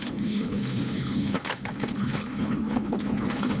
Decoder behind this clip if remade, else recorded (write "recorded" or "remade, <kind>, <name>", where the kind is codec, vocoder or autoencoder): remade, codec, HILCodec